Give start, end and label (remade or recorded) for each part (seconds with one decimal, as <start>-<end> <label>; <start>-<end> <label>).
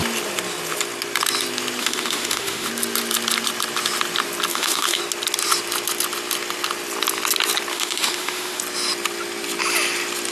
0.0-1.8 recorded; 1.8-2.7 remade; 2.7-4.5 recorded; 4.5-5.0 remade; 5.0-7.7 recorded; 7.7-8.6 remade; 8.6-10.3 recorded